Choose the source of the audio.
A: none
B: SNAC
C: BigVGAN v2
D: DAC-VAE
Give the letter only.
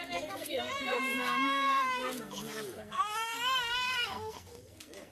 B